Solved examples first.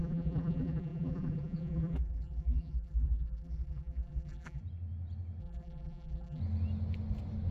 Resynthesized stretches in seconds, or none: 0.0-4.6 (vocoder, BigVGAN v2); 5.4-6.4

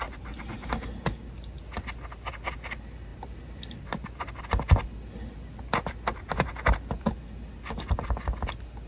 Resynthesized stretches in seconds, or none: 3.1-4.4 (vocoder, BigVGAN v2)

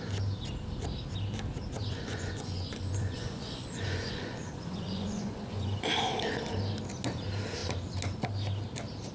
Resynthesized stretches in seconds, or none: 1.8-5.7 (vocoder, Vocos)

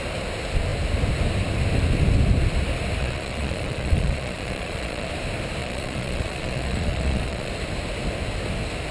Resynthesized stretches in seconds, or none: 3.0-5.1 (vocoder, Vocos); 5.6-7.5

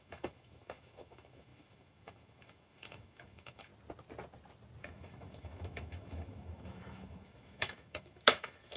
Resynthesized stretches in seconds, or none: 0.0-3.7 (autoencoder, DAC-VAE); 4.8-8.8

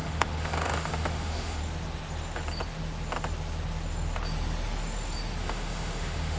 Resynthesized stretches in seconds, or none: 0.0-1.6 (autoencoder, DAC-VAE); 5.4-6.4

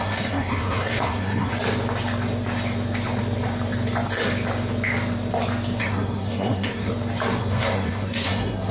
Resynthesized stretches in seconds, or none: 0.0-1.5 (codec, SNAC); 5.8-6.9; 7.4-8.7